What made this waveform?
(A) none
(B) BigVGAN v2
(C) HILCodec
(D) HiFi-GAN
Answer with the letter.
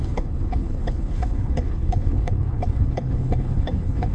C